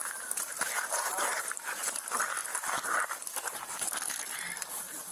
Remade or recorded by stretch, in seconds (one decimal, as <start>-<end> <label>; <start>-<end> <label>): 0.0-1.7 remade; 1.7-5.1 recorded